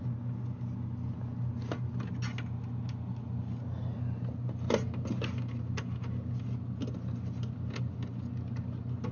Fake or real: real